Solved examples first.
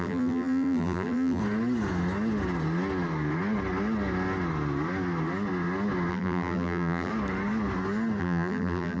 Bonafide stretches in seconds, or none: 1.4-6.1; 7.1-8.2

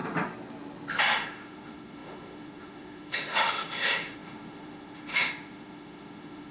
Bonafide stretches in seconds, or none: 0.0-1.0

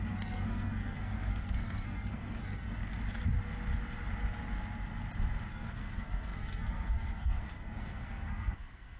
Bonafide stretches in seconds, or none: 2.8-5.5

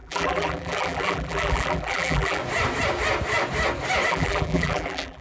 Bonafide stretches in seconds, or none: 2.4-4.1